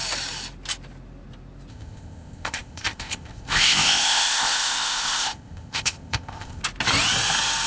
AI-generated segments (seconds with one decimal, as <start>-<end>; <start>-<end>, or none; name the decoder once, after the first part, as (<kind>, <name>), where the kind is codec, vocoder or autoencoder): 1.7-6.6 (codec, ZipCodec)

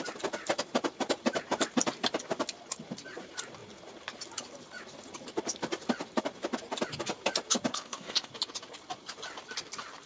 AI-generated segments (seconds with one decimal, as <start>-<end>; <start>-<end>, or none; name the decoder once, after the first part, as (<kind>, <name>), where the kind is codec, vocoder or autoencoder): 7.7-8.3 (codec, ZipCodec)

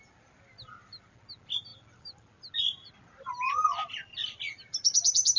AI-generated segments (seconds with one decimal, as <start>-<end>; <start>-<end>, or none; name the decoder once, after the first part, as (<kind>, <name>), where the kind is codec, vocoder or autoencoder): none

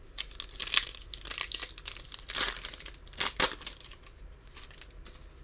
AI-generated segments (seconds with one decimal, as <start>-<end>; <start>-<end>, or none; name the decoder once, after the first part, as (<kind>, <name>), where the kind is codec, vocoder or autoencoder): none

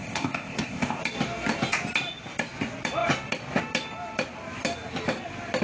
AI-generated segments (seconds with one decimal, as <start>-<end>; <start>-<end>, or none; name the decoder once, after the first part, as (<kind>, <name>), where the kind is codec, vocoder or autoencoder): 0.0-1.0 (codec, ZipCodec)

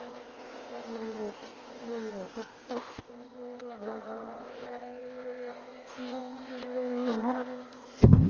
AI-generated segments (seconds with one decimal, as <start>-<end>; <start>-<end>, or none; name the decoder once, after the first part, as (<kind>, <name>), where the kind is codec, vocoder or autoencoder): 0.0-8.3 (codec, ZipCodec)